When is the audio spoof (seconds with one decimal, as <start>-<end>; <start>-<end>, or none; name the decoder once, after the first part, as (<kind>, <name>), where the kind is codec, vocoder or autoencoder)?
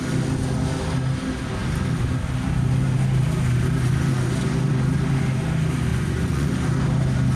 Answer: 5.9-6.5 (vocoder, Vocos)